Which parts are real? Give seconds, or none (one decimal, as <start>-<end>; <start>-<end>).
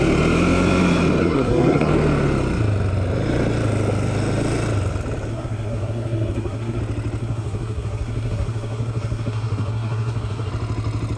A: 0.0-1.2; 1.9-5.3; 6.8-7.2; 10.5-11.2